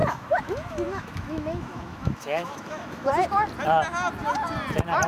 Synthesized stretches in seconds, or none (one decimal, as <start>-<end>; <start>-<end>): 0.0-3.1